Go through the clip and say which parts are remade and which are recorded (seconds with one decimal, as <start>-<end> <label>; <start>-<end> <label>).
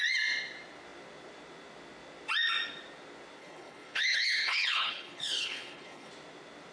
0.0-3.4 recorded; 3.4-6.1 remade; 6.1-6.7 recorded